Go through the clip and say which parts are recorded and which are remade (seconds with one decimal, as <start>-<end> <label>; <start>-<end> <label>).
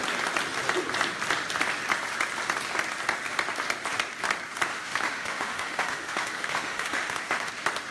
0.0-4.7 recorded; 4.7-7.5 remade; 7.5-7.9 recorded